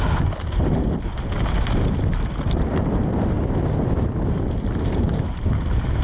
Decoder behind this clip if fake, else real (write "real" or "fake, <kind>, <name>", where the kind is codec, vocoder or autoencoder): real